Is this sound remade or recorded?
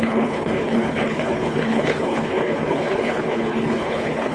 remade